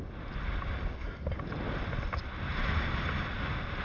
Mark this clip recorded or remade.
recorded